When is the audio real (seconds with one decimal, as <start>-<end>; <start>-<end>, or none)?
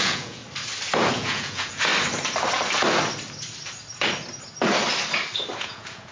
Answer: 0.4-1.1; 1.9-5.6